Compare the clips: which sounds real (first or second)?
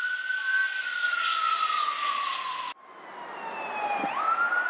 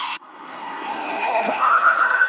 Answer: first